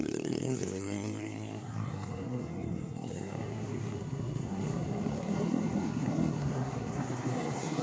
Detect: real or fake fake